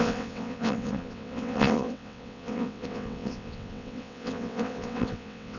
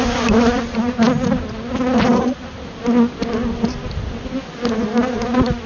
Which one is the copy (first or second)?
first